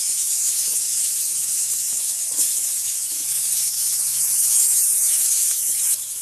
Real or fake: fake